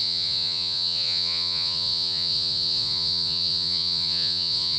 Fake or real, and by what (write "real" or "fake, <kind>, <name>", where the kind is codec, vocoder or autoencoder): fake, vocoder, Vocos